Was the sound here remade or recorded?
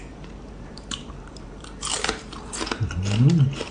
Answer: remade